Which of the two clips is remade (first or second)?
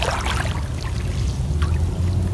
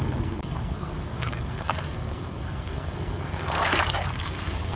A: second